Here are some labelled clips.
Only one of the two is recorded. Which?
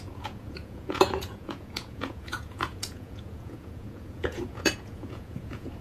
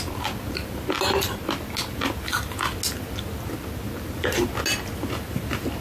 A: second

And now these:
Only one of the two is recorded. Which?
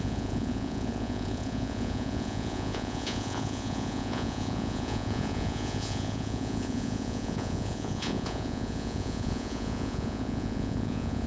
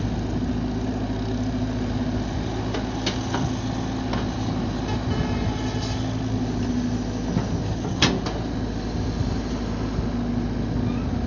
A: second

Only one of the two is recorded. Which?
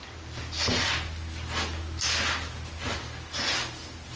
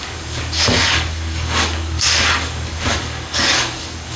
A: first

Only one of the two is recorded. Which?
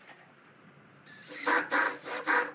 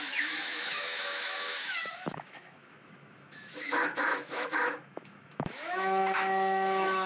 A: first